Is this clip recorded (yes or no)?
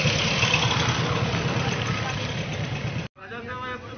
yes